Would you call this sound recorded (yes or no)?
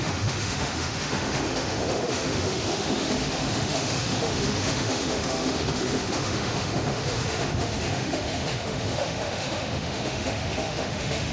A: no